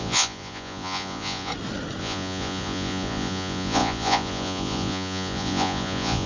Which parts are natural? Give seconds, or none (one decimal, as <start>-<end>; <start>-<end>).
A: 1.5-2.0